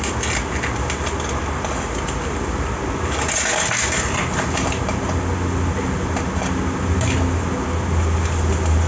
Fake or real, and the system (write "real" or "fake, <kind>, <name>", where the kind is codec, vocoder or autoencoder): real